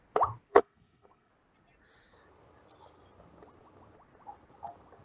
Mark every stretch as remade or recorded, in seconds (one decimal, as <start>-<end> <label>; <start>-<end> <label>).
0.0-0.5 recorded; 0.5-1.3 remade; 1.3-5.0 recorded